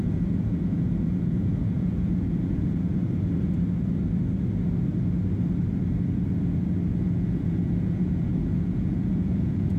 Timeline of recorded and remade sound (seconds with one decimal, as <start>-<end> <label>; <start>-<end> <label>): 0.0-3.0 remade; 3.0-6.9 recorded; 6.9-9.8 remade